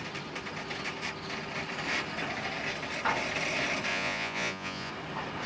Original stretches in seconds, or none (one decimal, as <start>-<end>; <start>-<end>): 0.0-3.9; 4.9-5.5